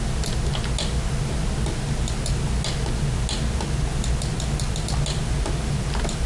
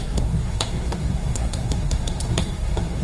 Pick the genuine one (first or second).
first